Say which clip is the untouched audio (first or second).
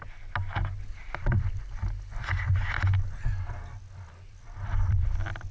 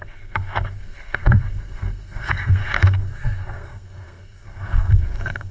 first